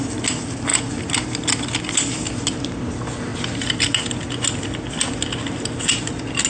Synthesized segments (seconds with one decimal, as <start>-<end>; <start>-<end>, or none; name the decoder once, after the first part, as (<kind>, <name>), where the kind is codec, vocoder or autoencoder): none